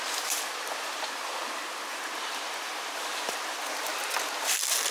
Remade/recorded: recorded